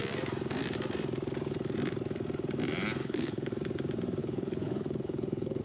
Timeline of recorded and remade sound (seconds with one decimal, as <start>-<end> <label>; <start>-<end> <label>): 0.0-3.0 recorded; 3.0-3.5 remade; 3.5-4.2 recorded; 4.2-5.6 remade